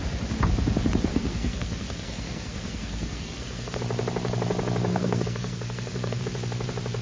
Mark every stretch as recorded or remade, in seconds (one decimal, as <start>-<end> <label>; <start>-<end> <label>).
0.0-1.1 recorded; 1.1-3.8 remade; 3.8-4.9 recorded; 4.9-6.2 remade; 6.2-7.0 recorded